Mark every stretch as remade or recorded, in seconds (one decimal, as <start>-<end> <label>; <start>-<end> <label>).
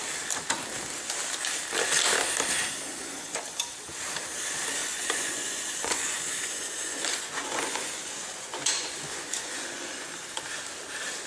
0.0-2.9 recorded; 2.9-3.4 remade; 3.4-4.8 recorded; 4.8-10.1 remade; 10.1-11.3 recorded